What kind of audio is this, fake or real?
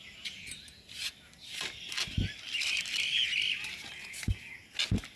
real